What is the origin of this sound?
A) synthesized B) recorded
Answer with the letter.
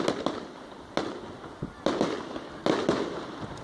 B